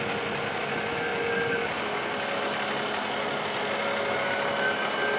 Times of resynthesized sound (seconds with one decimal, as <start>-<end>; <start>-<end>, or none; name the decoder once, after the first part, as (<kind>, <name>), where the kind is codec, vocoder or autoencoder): none